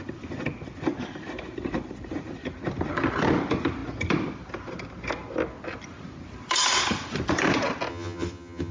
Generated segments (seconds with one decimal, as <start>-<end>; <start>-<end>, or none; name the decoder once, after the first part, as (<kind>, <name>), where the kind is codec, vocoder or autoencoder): 7.9-8.7 (vocoder, HiFi-GAN)